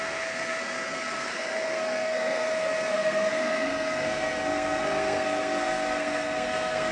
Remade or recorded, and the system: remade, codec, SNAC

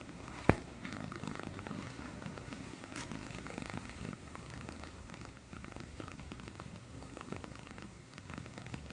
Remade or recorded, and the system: remade, codec, SNAC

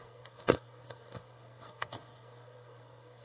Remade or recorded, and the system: remade, codec, SNAC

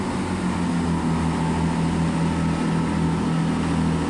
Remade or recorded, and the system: recorded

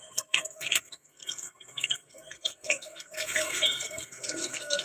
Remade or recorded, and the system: remade, codec, SNAC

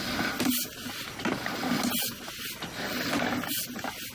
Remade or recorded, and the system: recorded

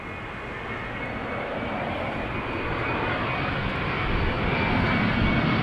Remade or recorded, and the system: recorded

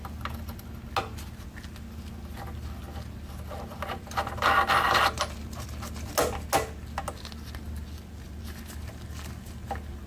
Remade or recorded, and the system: recorded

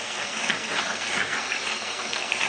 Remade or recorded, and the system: remade, codec, SNAC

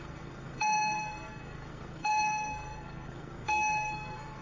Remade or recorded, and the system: remade, codec, SNAC